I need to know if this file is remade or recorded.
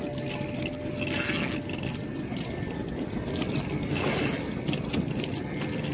recorded